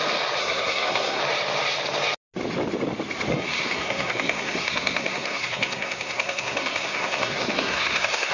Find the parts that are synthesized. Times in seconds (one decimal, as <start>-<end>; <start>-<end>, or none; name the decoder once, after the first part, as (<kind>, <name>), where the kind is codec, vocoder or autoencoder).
0.4-1.2 (codec, SNAC); 3.3-8.3